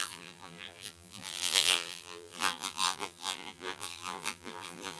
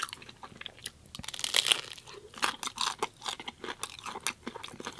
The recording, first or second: second